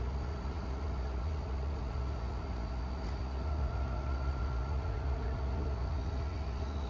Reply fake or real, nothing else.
fake